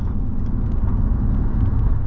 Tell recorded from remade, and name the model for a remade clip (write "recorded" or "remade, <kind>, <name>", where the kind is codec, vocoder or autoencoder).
recorded